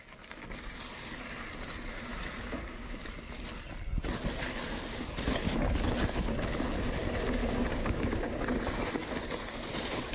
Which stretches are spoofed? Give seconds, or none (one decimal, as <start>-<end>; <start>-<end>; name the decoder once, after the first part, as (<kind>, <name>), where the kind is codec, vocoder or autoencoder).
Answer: 7.4-8.3 (codec, DAC)